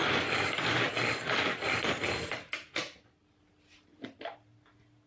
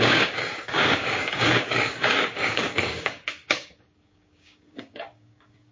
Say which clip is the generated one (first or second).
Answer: second